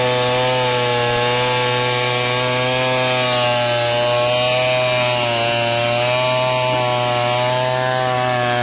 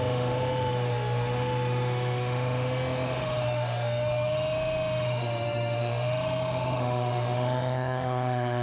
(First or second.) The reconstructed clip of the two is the second